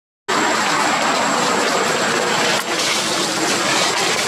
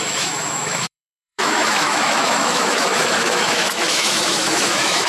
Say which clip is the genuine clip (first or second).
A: first